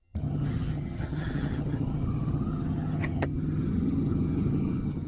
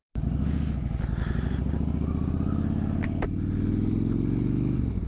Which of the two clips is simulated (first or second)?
first